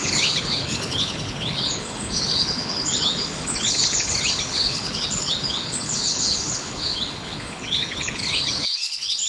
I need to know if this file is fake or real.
fake